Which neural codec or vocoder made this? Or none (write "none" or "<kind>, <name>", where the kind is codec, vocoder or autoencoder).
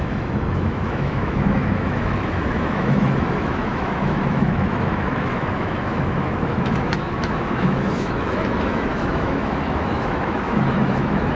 autoencoder, DAC-VAE